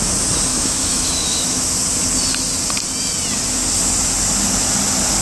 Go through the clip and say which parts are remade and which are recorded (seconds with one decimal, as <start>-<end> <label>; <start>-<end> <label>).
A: 0.0-0.5 recorded; 0.5-1.6 remade; 1.6-5.2 recorded

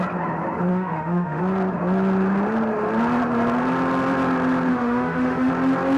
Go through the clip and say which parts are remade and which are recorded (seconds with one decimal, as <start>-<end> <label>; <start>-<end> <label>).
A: 0.0-0.7 recorded; 0.7-1.4 remade; 1.4-4.7 recorded; 4.7-5.5 remade; 5.5-6.0 recorded

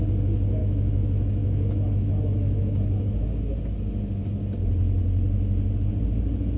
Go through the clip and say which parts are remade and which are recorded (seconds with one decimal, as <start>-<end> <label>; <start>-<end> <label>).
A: 0.0-0.6 recorded; 0.6-3.4 remade; 3.4-6.6 recorded